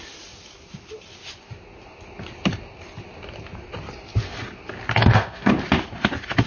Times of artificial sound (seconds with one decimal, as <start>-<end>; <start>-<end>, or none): 5.0-5.5